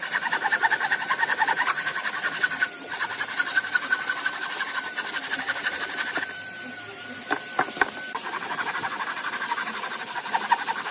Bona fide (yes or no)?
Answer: no